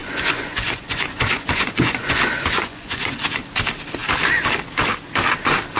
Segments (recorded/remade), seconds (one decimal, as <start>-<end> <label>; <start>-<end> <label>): 0.0-3.2 remade; 3.2-5.8 recorded